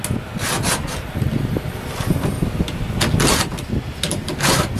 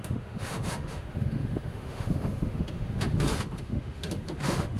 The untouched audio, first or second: first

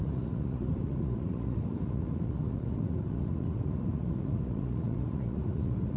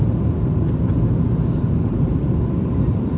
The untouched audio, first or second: second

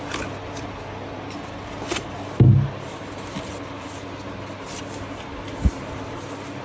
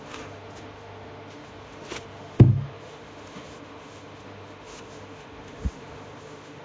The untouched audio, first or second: first